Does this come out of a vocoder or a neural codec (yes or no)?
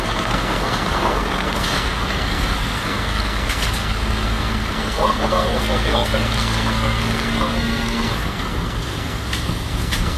yes